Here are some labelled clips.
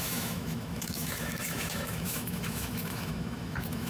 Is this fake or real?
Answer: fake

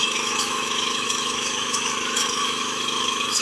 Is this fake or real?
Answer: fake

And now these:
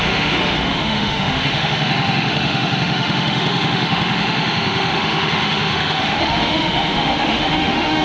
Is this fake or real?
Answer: fake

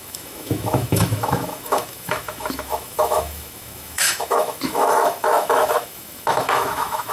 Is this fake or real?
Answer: fake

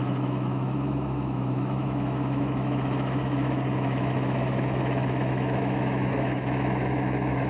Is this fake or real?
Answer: fake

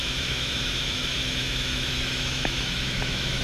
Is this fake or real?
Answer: fake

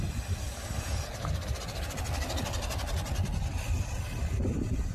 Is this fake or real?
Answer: real